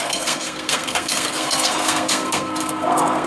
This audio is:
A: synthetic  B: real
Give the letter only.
A